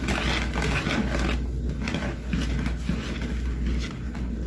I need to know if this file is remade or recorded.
recorded